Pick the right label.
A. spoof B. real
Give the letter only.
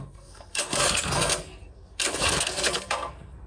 A